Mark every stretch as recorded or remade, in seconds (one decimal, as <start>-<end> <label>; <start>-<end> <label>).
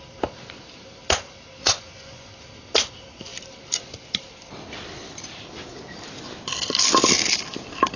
0.0-1.6 recorded; 1.6-2.3 remade; 2.3-8.0 recorded